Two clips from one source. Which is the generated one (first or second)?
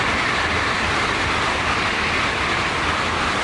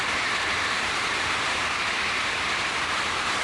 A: second